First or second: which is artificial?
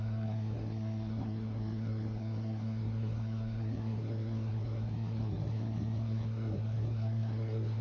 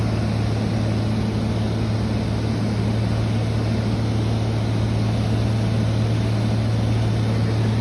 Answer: first